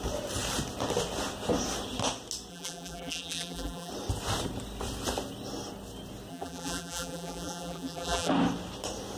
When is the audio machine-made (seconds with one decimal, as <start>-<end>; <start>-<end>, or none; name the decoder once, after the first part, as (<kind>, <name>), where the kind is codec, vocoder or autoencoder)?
2.5-3.9 (vocoder, BigVGAN v2); 6.3-8.3